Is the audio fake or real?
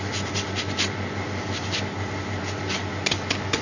real